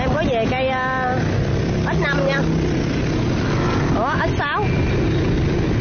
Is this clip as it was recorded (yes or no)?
yes